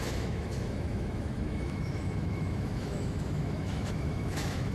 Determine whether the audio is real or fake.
fake